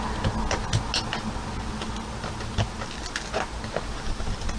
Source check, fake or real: real